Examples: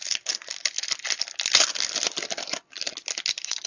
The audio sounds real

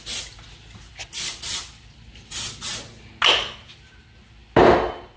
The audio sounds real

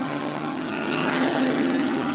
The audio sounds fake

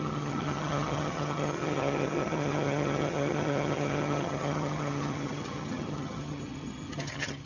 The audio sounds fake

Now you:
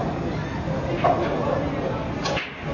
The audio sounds real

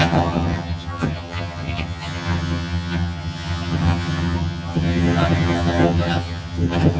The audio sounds fake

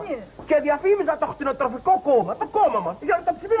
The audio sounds real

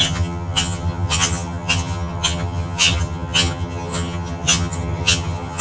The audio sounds fake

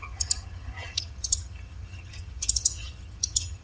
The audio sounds fake